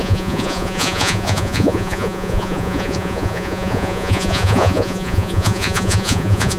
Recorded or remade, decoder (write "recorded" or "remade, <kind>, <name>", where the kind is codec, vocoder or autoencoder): remade, vocoder, Vocos